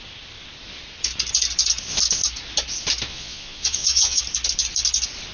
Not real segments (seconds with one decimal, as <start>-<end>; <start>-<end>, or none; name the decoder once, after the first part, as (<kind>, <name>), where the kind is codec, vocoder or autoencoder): 3.1-4.2 (vocoder, Vocos)